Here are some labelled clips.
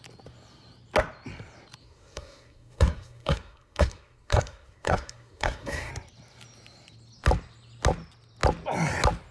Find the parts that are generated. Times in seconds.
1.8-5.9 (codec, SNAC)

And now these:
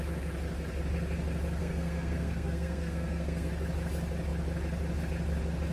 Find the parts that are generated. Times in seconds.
1.6-3.5 (codec, SNAC)

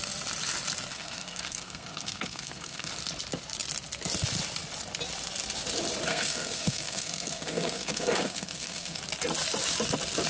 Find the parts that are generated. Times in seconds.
0.9-2.9 (codec, SNAC); 6.1-9.0

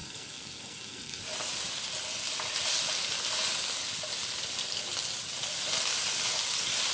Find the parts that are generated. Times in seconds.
0.0-1.2 (codec, SNAC)

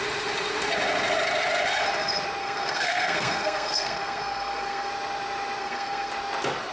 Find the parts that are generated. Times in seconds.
2.4-4.9 (codec, SNAC); 5.6-6.1